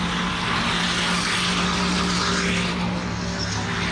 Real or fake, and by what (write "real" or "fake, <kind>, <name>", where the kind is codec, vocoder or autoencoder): real